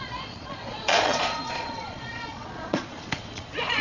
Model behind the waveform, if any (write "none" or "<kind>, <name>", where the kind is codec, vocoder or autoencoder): vocoder, Vocos